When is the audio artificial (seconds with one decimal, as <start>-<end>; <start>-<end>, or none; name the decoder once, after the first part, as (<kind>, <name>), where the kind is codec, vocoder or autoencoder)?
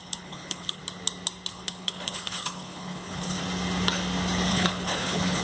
0.0-0.8 (codec, HILCodec); 1.5-3.4; 4.5-5.4